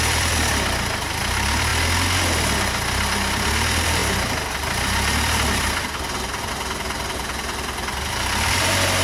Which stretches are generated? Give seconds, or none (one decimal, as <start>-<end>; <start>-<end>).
0.0-1.7; 3.3-9.0